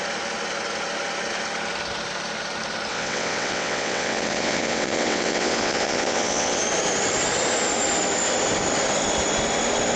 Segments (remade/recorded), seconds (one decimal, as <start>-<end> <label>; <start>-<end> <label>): 0.0-2.9 recorded; 2.9-6.6 remade; 6.6-10.0 recorded